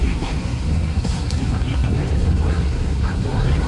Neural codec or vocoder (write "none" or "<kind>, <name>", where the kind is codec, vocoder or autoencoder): codec, SNAC